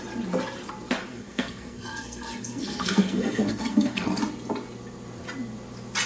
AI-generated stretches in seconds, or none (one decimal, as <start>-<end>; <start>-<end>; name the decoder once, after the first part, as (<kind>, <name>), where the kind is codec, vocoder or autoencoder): 1.1-4.2 (codec, SNAC)